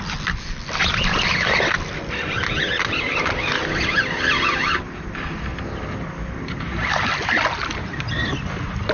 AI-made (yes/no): no